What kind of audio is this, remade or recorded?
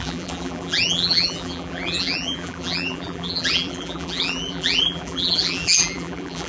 remade